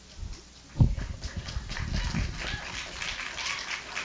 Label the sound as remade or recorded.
recorded